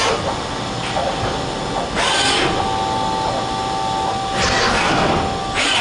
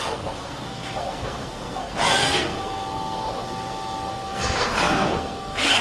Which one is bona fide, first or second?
first